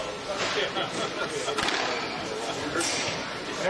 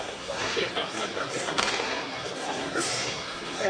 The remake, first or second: second